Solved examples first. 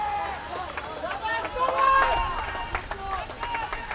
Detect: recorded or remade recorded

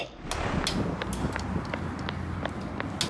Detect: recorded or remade recorded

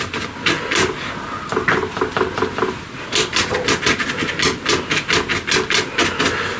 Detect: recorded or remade recorded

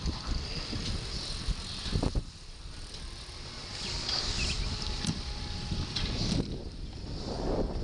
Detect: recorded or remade remade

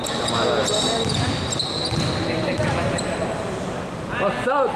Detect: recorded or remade recorded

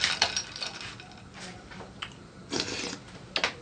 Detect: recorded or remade recorded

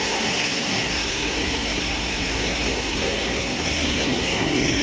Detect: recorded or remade remade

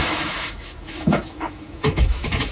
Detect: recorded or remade remade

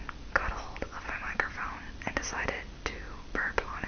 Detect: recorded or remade recorded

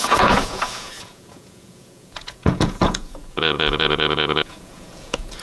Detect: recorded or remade remade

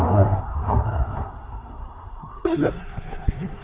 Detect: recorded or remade remade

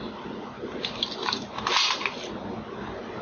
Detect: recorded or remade recorded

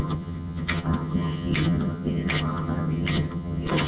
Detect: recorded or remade remade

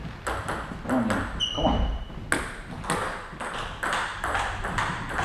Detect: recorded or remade recorded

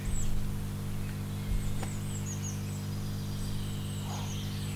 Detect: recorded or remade recorded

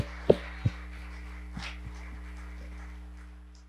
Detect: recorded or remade recorded